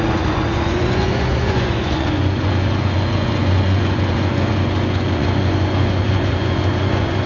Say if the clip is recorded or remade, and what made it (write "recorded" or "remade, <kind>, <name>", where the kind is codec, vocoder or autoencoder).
remade, vocoder, Vocos